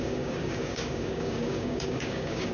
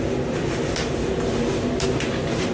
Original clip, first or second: second